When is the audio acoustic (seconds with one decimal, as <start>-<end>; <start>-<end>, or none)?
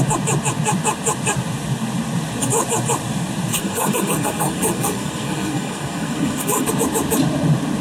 0.0-3.5; 6.7-7.8